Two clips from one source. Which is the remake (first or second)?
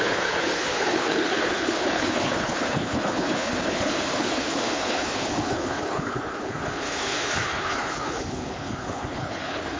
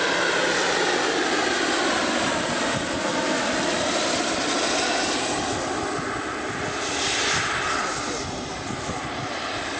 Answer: first